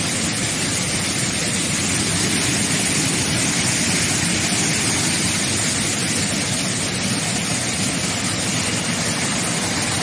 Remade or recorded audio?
recorded